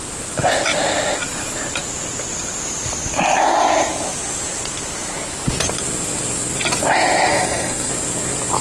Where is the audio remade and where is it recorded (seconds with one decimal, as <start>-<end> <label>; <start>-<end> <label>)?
0.0-7.3 recorded; 7.3-7.9 remade; 7.9-8.6 recorded

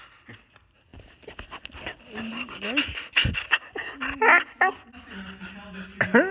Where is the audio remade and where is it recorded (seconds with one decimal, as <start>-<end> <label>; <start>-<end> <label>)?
0.0-6.3 recorded